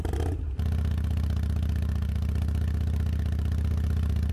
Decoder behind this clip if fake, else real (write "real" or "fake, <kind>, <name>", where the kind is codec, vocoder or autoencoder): real